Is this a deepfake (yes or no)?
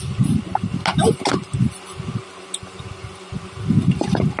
no